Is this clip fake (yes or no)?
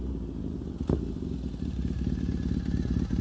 no